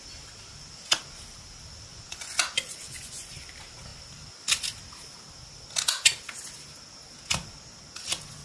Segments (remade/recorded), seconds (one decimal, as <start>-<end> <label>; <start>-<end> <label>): 0.0-1.9 recorded; 1.9-3.5 remade; 3.5-8.4 recorded